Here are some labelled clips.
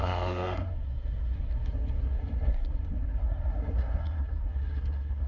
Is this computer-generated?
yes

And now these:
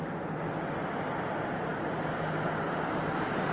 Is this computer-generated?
no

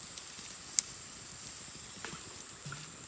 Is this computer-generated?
no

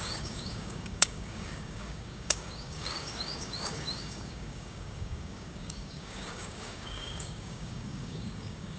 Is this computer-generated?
yes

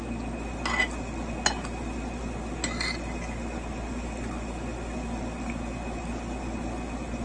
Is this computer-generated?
no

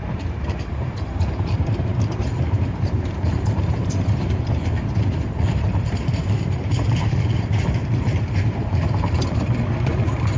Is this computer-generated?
yes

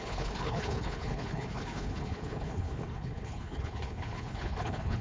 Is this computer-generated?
yes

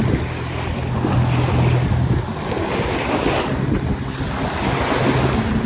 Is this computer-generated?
no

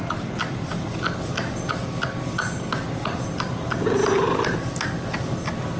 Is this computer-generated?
no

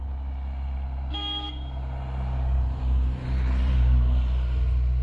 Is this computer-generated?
no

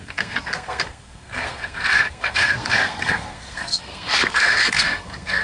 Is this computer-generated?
yes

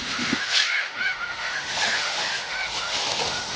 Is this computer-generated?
yes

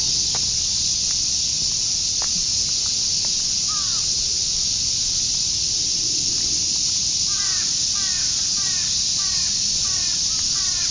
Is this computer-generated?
no